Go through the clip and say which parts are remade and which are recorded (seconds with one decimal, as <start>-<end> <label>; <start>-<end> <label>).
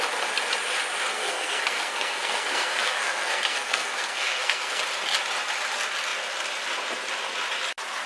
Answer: 0.0-1.1 recorded; 1.1-4.8 remade; 4.8-8.1 recorded